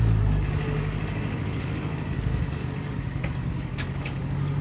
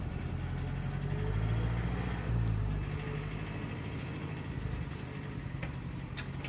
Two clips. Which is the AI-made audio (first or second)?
first